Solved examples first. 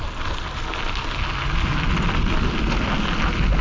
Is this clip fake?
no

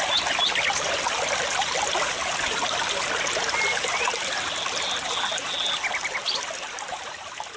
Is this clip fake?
no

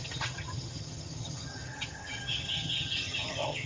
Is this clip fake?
yes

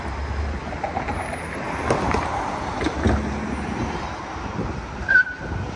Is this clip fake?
no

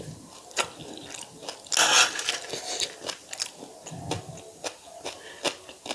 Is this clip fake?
no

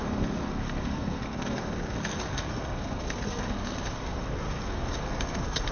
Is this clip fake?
yes